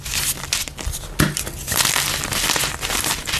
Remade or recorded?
recorded